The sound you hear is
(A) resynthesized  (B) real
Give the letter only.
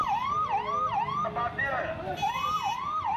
B